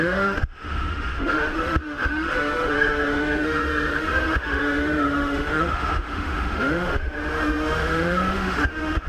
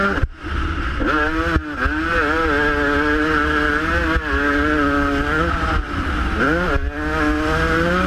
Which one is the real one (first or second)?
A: second